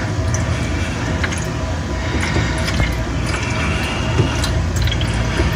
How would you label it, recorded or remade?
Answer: recorded